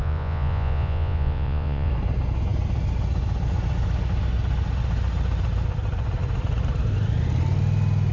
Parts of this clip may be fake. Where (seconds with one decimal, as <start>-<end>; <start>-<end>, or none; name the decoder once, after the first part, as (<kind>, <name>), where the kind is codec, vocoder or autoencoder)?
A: 0.0-1.9 (vocoder, Vocos)